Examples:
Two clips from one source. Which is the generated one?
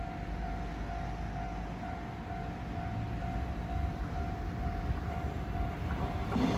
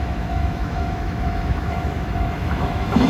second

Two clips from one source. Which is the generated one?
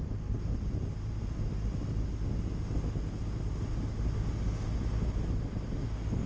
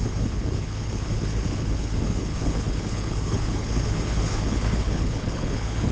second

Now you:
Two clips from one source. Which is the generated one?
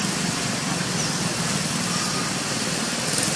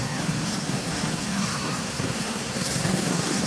second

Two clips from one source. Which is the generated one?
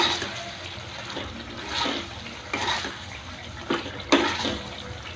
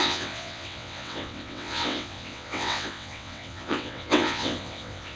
second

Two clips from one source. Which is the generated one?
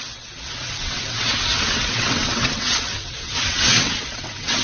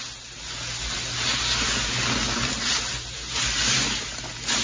first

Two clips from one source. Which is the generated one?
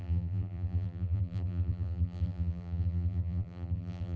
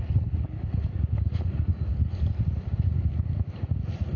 first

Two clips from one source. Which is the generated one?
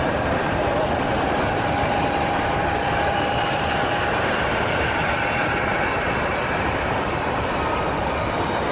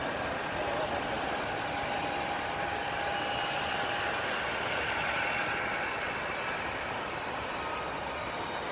first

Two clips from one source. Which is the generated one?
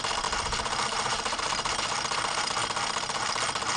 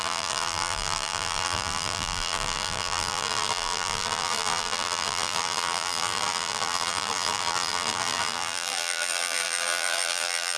second